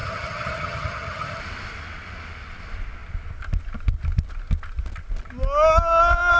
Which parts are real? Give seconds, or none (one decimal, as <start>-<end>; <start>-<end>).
1.4-6.4